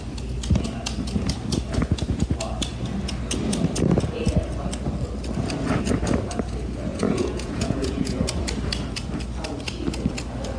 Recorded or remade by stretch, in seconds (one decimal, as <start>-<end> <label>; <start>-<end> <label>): 0.0-6.9 recorded; 6.9-8.3 remade; 8.3-10.6 recorded